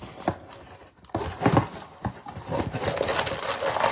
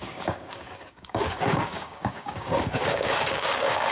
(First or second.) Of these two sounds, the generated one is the second